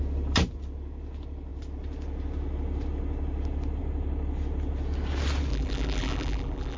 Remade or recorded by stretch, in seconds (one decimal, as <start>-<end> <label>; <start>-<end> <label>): 0.0-5.5 recorded; 5.5-6.8 remade